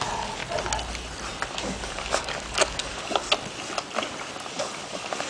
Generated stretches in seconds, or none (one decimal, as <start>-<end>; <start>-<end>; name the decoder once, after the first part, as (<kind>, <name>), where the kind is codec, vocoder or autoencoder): 0.0-0.4 (codec, DAC); 1.5-3.2; 4.5-5.3